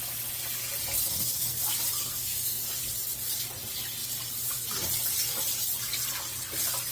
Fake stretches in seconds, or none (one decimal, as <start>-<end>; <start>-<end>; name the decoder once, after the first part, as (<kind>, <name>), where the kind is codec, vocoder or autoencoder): 1.1-1.6 (codec, SNAC); 2.0-2.6